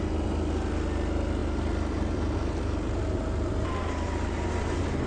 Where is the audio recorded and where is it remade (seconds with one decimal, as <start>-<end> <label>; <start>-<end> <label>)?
0.0-5.1 recorded